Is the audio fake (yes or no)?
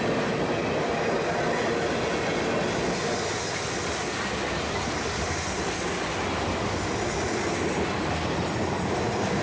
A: no